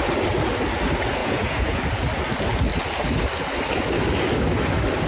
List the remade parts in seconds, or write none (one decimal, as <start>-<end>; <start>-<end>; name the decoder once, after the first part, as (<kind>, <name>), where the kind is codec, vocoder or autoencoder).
1.2-1.8 (vocoder, Vocos)